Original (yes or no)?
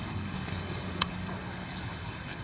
no